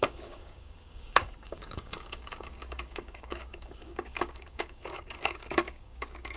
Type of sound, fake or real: fake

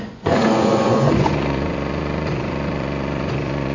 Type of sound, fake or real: fake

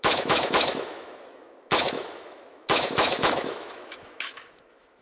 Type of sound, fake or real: fake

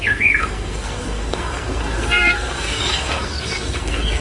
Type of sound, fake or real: fake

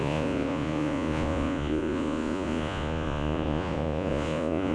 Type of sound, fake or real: fake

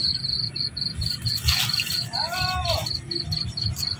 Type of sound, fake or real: real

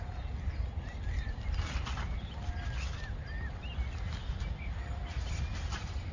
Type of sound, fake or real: real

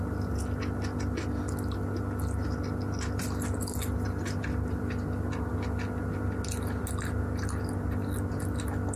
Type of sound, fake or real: real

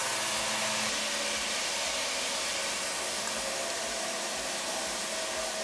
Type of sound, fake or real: real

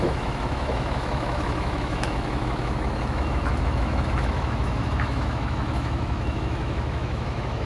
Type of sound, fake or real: fake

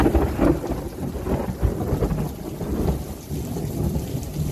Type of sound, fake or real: real